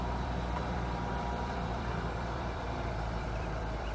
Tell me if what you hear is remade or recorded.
remade